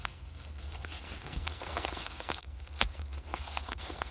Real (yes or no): no